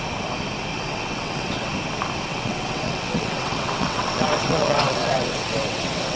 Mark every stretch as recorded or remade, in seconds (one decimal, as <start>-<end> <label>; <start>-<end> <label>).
0.0-0.7 recorded; 0.7-1.7 remade; 1.7-2.3 recorded; 2.3-6.2 remade